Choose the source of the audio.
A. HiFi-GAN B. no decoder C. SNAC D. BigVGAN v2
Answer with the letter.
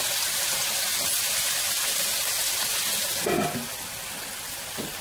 B